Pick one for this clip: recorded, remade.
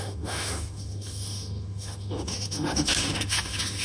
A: remade